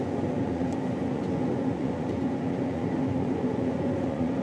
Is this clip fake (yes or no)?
yes